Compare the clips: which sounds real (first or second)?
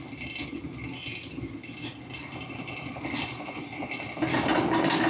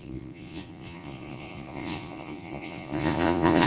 first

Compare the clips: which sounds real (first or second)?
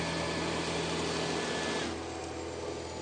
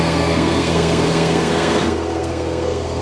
first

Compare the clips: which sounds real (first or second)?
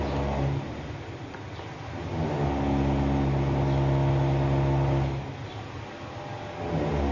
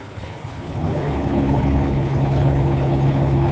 first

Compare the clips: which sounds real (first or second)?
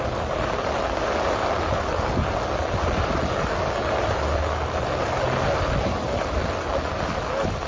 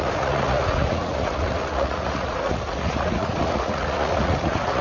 first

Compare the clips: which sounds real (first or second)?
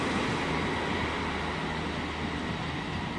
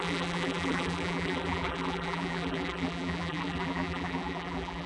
first